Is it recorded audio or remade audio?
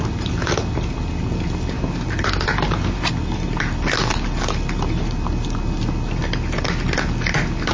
recorded